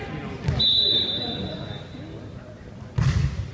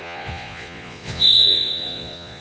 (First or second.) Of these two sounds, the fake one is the second